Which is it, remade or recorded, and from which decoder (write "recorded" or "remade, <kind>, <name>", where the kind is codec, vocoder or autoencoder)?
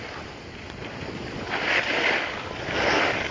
recorded